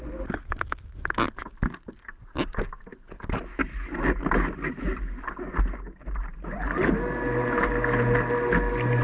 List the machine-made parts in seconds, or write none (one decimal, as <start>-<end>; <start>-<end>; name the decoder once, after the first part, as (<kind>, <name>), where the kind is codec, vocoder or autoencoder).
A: none